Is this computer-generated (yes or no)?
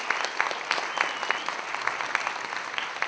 no